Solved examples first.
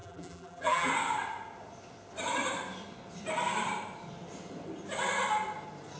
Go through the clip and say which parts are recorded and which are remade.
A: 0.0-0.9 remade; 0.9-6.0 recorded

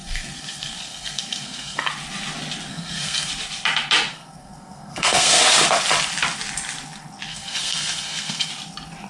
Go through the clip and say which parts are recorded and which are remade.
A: 0.0-1.9 remade; 1.9-2.7 recorded; 2.7-3.3 remade; 3.3-4.1 recorded; 4.1-5.4 remade; 5.4-7.3 recorded; 7.3-8.5 remade; 8.5-9.1 recorded

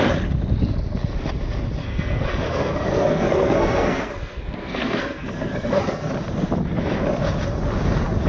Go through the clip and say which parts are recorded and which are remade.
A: 0.0-1.8 recorded; 1.8-6.1 remade; 6.1-8.3 recorded

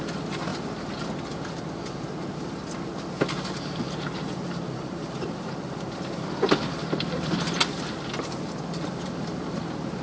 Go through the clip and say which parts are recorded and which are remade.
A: 0.0-0.5 remade; 0.5-3.2 recorded; 3.2-10.0 remade